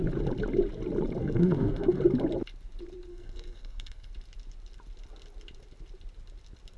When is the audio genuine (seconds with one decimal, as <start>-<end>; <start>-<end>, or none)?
0.0-1.2; 2.0-3.1; 4.1-6.8